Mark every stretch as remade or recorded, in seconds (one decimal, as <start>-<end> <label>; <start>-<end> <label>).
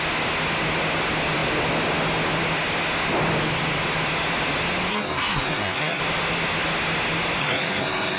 0.0-4.9 recorded; 4.9-6.0 remade; 6.0-7.4 recorded; 7.4-8.2 remade